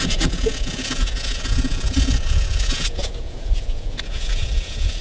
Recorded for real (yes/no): no